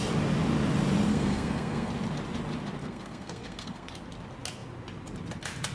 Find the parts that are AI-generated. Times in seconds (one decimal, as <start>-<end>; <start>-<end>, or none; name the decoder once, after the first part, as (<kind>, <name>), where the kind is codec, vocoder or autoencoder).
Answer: 1.1-1.9 (codec, SNAC); 2.8-3.9